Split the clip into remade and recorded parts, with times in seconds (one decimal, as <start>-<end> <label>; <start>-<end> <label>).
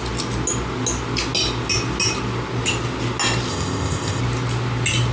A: 0.0-3.5 recorded; 3.5-4.2 remade; 4.2-5.1 recorded